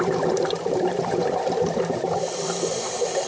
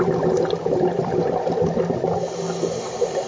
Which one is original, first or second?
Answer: second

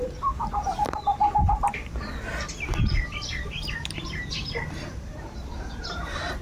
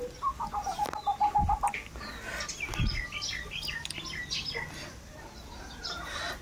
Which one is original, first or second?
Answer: second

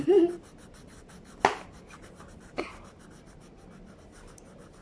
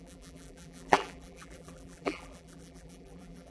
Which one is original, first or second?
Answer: first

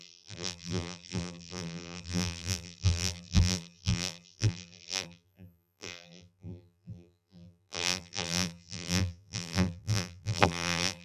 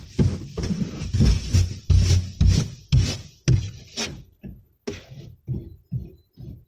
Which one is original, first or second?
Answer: second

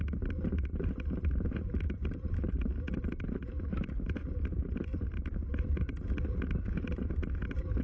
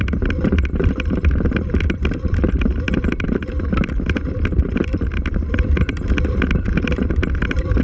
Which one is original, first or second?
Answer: first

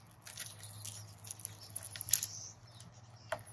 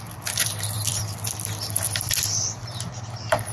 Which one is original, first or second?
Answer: first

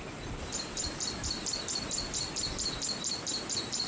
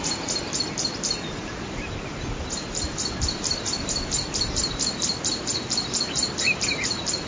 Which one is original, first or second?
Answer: first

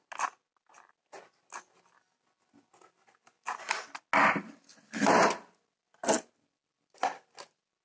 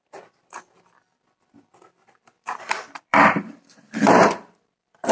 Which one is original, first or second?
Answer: first